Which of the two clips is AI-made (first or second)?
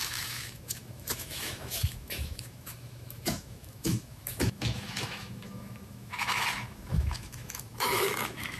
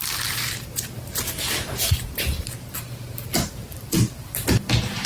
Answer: first